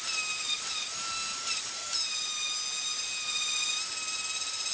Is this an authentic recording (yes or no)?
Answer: yes